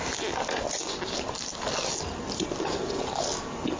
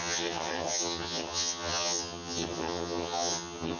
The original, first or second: first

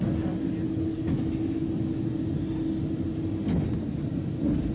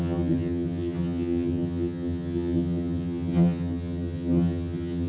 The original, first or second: first